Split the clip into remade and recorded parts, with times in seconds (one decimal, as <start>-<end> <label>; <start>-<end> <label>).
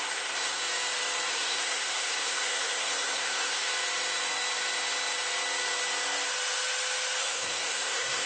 0.0-0.6 remade; 0.6-1.3 recorded; 1.3-3.7 remade; 3.7-7.2 recorded; 7.2-8.3 remade